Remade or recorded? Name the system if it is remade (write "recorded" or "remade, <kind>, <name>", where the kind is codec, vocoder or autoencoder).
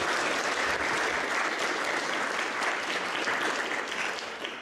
recorded